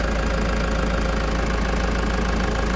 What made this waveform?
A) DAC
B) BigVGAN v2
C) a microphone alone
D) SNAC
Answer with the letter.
C